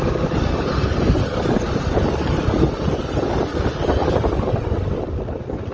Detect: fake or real real